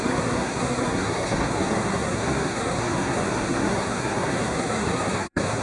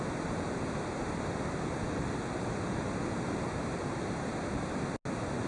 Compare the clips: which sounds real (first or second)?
second